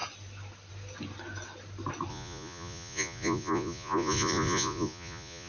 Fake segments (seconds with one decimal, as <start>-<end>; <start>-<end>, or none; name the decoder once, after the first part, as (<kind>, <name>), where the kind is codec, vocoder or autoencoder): 2.1-5.5 (vocoder, Vocos)